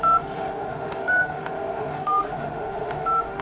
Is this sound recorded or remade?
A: remade